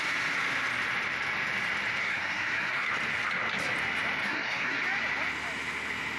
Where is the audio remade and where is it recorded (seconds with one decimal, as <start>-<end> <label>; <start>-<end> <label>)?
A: 0.0-2.0 recorded; 2.0-2.9 remade; 2.9-4.2 recorded; 4.2-4.8 remade; 4.8-6.2 recorded